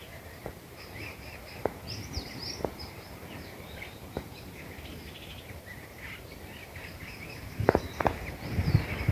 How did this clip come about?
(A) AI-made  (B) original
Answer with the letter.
A